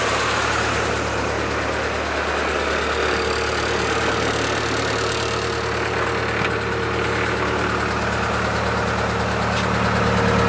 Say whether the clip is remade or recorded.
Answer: recorded